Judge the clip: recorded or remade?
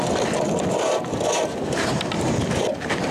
recorded